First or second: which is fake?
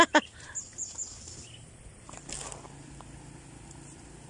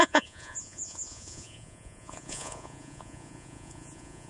second